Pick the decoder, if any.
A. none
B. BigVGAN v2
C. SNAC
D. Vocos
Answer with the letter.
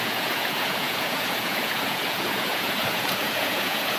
D